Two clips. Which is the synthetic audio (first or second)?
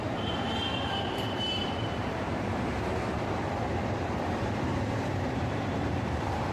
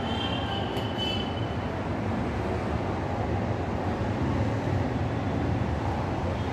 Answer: first